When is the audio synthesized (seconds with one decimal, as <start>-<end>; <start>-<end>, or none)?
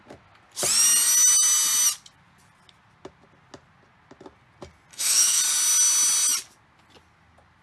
4.9-5.4